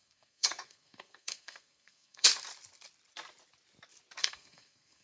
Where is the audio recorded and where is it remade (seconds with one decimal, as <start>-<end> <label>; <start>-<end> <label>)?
0.0-2.3 remade; 2.3-4.2 recorded; 4.2-5.0 remade